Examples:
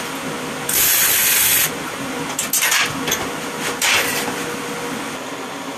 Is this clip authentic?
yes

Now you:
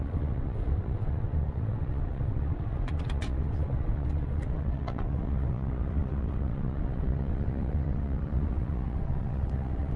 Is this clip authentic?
no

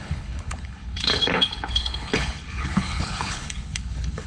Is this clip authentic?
no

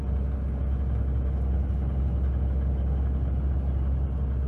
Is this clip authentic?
yes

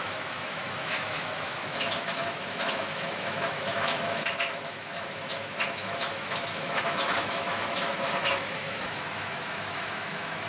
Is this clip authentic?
no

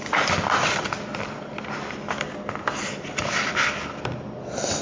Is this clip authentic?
yes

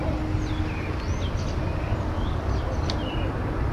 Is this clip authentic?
yes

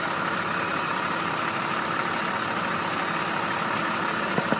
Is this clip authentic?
yes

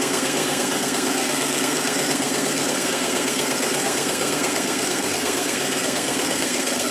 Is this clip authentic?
no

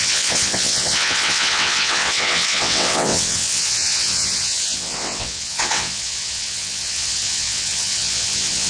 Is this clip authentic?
no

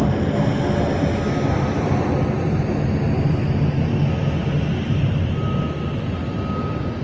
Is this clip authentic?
yes